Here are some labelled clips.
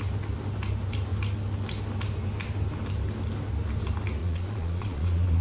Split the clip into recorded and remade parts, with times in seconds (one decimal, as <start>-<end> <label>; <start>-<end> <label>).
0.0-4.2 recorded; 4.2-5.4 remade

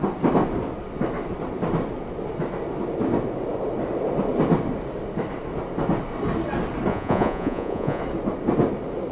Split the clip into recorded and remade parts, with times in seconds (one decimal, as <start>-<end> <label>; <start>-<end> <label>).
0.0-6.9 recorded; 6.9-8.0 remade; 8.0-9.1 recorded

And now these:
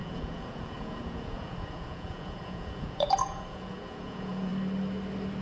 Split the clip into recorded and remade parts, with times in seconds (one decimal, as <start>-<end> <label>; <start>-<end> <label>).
0.0-4.5 remade; 4.5-5.4 recorded

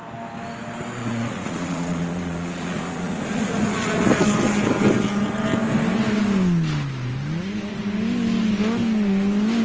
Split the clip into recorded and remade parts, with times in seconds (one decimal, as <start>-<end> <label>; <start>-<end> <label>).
0.0-1.0 recorded; 1.0-4.2 remade; 4.2-9.6 recorded

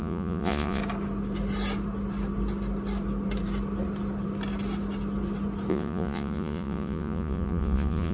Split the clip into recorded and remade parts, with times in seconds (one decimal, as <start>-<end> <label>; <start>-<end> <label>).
0.0-0.8 remade; 0.8-5.7 recorded; 5.7-8.1 remade

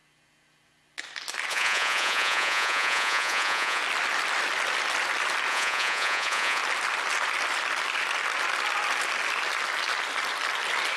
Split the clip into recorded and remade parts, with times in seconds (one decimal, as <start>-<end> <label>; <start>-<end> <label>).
0.0-1.5 recorded; 1.5-3.8 remade; 3.8-5.5 recorded; 5.5-6.6 remade; 6.6-11.0 recorded

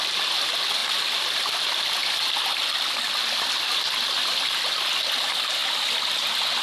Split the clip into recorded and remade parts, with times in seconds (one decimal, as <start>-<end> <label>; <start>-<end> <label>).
0.0-6.6 recorded